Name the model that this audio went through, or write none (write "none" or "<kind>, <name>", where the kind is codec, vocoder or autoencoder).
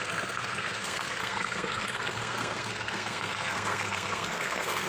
codec, SNAC